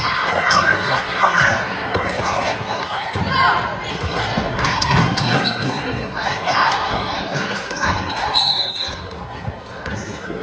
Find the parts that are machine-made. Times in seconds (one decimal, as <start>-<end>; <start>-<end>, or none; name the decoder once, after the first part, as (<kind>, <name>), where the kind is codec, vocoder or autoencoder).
0.0-3.2 (codec, SNAC); 3.9-10.4